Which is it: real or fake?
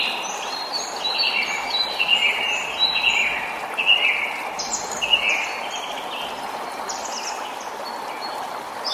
real